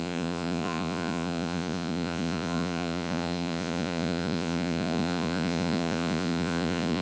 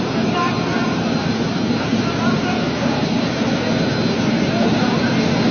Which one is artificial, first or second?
first